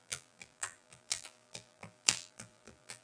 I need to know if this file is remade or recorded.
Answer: remade